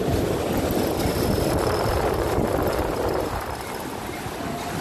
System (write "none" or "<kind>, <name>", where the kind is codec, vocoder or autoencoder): none